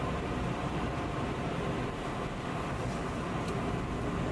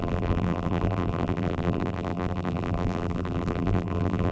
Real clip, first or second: first